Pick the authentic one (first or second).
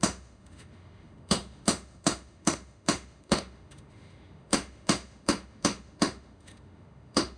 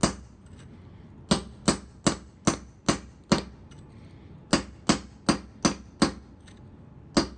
second